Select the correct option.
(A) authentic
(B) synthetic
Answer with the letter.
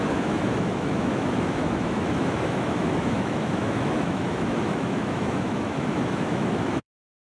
B